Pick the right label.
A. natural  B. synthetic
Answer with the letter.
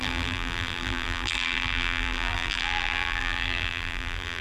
B